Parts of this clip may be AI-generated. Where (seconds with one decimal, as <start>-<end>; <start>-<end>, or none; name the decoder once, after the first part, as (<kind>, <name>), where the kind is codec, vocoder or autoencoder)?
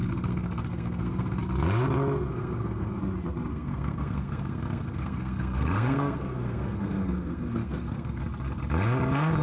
0.0-1.4 (codec, SNAC); 2.3-3.0; 3.5-8.2